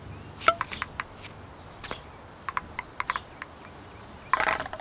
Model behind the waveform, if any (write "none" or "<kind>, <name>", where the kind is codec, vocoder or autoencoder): none